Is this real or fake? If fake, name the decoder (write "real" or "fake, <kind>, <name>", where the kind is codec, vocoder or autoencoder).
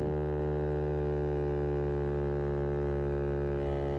real